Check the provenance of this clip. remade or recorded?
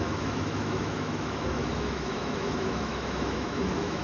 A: remade